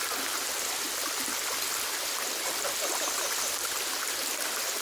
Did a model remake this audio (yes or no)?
no